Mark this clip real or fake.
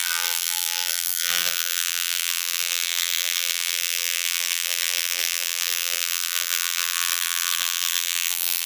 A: fake